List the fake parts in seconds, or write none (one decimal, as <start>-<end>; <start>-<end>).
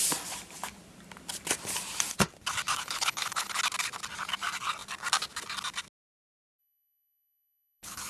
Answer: 2.7-3.6; 6.6-8.1